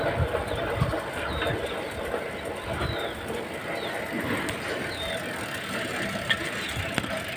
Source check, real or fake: real